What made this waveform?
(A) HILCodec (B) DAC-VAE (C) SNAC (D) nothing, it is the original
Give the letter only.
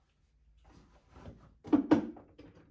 D